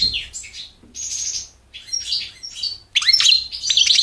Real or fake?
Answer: real